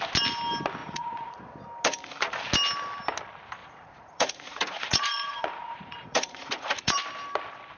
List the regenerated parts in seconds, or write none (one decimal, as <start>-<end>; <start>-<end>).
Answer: 0.8-1.5; 3.6-7.0